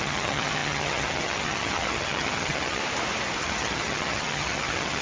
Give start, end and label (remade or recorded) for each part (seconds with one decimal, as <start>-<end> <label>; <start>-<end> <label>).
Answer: 0.0-2.8 remade; 2.8-3.4 recorded; 3.4-5.0 remade